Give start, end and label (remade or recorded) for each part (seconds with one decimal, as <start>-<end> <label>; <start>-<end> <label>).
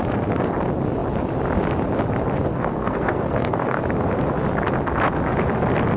0.0-2.5 recorded; 2.5-3.8 remade; 3.8-6.0 recorded